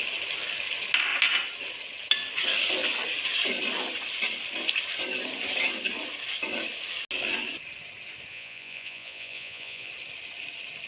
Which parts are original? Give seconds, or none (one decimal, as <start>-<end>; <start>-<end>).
0.0-8.3; 9.9-10.9